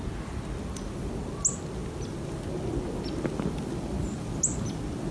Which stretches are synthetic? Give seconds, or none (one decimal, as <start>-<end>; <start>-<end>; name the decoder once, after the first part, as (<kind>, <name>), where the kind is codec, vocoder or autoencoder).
none